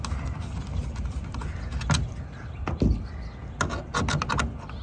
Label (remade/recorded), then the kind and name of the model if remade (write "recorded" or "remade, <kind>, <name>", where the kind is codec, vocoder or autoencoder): recorded